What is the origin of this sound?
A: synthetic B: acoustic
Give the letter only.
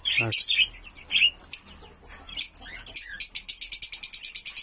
B